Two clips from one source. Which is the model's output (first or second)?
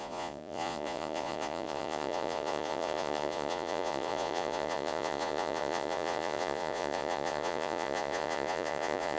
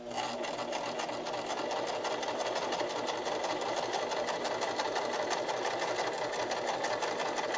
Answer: first